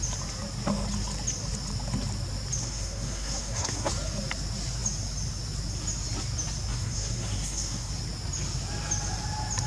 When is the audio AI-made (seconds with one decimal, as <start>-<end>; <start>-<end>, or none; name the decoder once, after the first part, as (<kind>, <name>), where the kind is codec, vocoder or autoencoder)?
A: 2.6-3.9 (codec, SNAC); 6.7-7.9